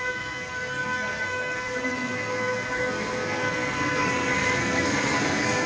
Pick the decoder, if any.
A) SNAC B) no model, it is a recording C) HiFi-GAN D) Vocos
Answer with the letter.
A